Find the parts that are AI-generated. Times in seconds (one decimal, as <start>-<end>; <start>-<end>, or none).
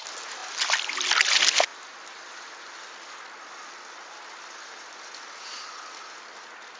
none